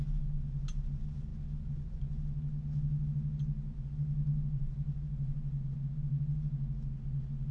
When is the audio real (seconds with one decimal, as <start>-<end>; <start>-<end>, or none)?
0.0-7.5